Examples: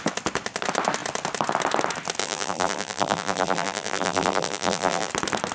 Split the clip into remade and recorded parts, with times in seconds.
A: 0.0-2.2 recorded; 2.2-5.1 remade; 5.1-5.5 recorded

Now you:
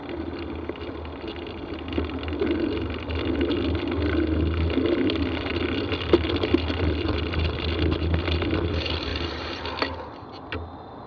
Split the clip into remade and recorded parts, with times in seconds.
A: 0.0-11.1 recorded

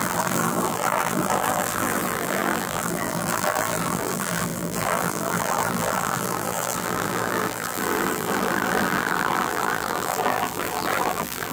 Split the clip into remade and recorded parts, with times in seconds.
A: 0.0-11.5 remade

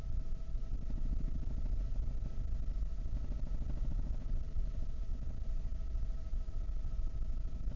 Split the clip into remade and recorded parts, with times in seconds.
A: 0.0-0.6 remade; 0.6-3.9 recorded; 3.9-5.1 remade; 5.1-6.5 recorded; 6.5-7.8 remade

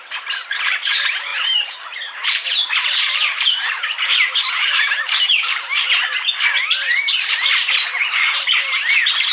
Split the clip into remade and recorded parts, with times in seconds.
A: 0.0-6.0 remade; 6.0-9.3 recorded

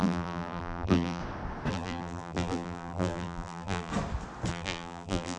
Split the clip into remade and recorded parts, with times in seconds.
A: 0.0-1.2 remade; 1.2-1.7 recorded; 1.7-3.9 remade; 3.9-4.5 recorded; 4.5-5.4 remade